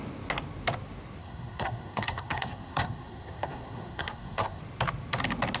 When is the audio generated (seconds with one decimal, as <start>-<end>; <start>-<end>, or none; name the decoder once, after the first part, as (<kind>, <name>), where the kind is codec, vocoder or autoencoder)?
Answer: 1.2-4.6 (codec, SNAC)